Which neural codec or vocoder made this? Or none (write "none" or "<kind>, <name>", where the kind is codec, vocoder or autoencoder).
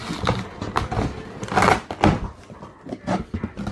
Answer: none